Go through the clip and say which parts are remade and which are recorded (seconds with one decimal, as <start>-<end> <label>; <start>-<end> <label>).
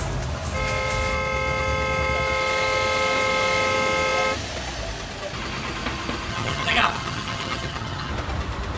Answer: 0.0-6.3 recorded; 6.3-8.1 remade; 8.1-8.8 recorded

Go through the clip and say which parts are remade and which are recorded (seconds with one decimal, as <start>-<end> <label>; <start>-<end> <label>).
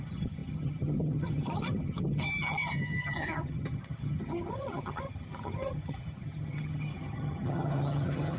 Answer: 0.0-8.4 remade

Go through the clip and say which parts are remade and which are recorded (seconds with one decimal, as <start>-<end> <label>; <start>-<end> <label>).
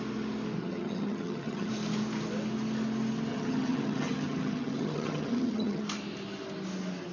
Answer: 0.0-0.6 recorded; 0.6-1.7 remade; 1.7-3.3 recorded; 3.3-5.8 remade; 5.8-7.1 recorded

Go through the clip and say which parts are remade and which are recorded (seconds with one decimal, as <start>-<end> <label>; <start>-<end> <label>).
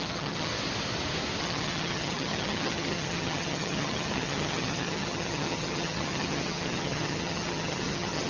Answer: 0.0-0.5 remade; 0.5-1.4 recorded; 1.4-8.3 remade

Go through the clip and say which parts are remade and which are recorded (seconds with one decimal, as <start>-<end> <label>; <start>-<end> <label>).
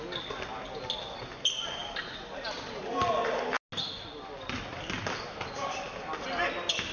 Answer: 0.0-6.9 recorded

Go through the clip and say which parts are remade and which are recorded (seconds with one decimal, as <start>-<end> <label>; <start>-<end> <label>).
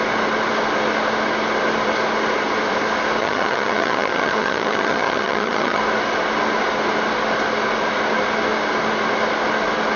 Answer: 0.0-3.2 recorded; 3.2-5.8 remade; 5.8-10.0 recorded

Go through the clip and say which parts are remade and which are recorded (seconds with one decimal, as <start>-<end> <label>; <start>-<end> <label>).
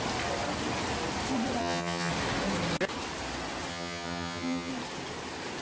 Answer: 0.0-1.6 recorded; 1.6-2.1 remade; 2.1-3.7 recorded; 3.7-4.7 remade; 4.7-5.6 recorded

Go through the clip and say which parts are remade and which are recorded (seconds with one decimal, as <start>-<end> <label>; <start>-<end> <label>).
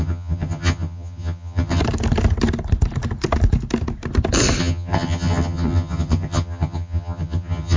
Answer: 0.0-1.8 remade; 1.8-4.6 recorded; 4.6-7.8 remade